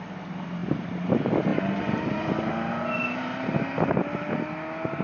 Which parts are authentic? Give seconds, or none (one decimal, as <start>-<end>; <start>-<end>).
0.0-0.6; 1.1-1.5; 4.5-5.0